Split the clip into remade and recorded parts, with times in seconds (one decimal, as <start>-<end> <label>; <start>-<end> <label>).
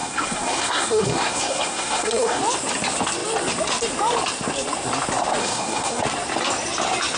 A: 0.0-2.4 remade; 2.4-5.4 recorded; 5.4-6.0 remade; 6.0-7.2 recorded